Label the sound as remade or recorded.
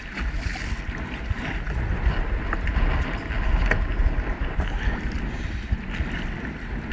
recorded